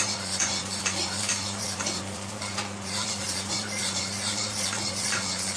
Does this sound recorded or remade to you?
remade